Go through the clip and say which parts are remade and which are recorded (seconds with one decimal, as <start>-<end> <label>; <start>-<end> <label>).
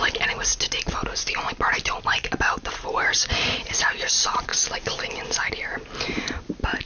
0.0-0.5 remade; 0.5-1.5 recorded; 1.5-4.5 remade; 4.5-5.4 recorded; 5.4-6.9 remade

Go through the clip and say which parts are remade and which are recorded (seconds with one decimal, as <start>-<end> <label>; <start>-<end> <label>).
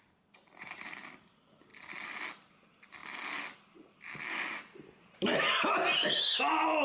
0.0-6.8 recorded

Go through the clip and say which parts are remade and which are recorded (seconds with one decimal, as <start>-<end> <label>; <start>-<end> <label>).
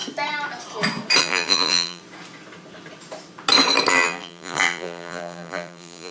0.0-1.2 recorded; 1.2-2.0 remade; 2.0-3.9 recorded; 3.9-6.1 remade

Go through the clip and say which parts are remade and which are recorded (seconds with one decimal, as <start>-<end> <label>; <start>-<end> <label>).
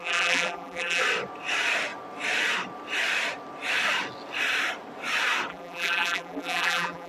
0.0-1.0 remade; 1.0-5.5 recorded; 5.5-7.1 remade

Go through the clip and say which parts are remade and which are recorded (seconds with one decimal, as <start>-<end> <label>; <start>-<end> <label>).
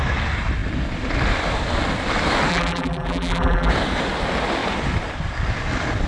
0.0-2.5 recorded; 2.5-3.7 remade; 3.7-6.1 recorded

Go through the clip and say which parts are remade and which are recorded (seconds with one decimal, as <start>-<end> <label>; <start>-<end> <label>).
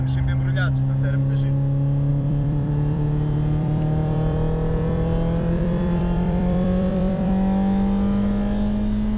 0.0-2.1 recorded; 2.1-7.3 remade; 7.3-9.2 recorded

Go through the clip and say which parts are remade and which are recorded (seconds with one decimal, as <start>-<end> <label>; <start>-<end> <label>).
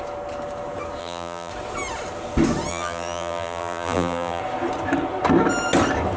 0.0-1.0 recorded; 1.0-1.5 remade; 1.5-2.7 recorded; 2.7-4.4 remade; 4.4-6.2 recorded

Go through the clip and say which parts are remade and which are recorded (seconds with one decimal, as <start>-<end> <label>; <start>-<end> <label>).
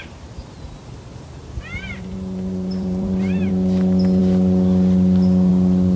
0.0-1.1 recorded; 1.1-3.5 remade; 3.5-6.0 recorded